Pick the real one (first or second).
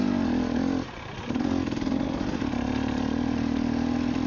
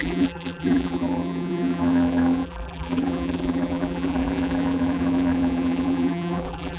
first